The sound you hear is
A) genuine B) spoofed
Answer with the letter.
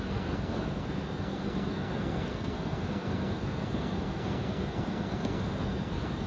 B